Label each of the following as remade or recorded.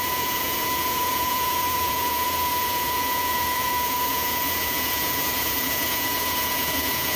remade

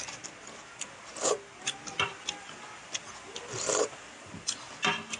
recorded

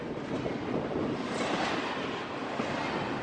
recorded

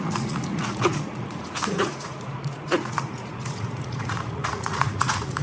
remade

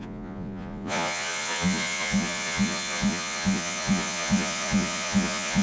remade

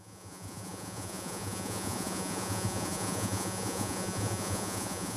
remade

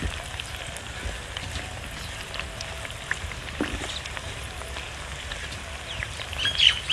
recorded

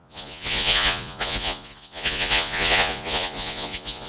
remade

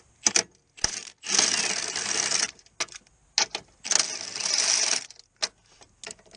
recorded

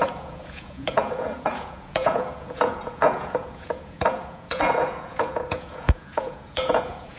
remade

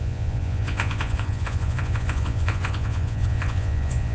remade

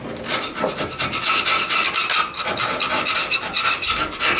recorded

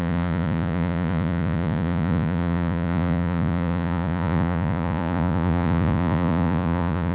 remade